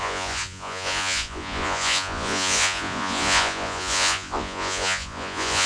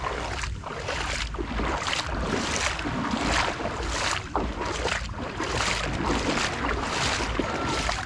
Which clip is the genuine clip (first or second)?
second